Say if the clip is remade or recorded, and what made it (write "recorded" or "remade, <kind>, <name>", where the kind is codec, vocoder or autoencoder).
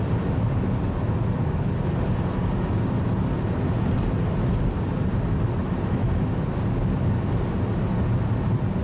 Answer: recorded